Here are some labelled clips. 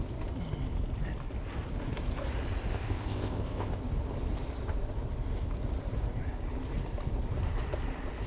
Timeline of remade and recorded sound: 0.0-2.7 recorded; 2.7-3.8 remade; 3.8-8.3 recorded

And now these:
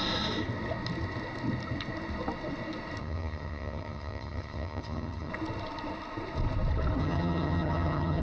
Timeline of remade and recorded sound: 0.0-3.0 recorded; 3.0-5.3 remade; 5.3-7.0 recorded; 7.0-8.2 remade

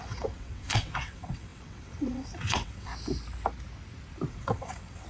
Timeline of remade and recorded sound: 0.0-2.9 remade; 2.9-4.3 recorded; 4.3-5.1 remade

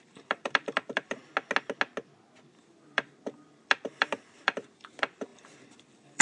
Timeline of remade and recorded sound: 0.0-1.2 remade; 1.2-2.6 recorded; 2.6-6.2 remade

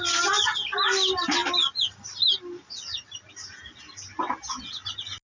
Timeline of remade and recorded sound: 0.0-5.4 recorded